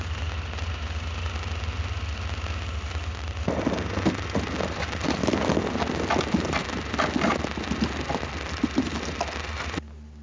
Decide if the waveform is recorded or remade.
recorded